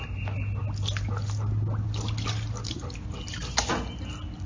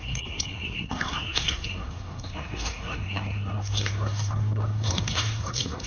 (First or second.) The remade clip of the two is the second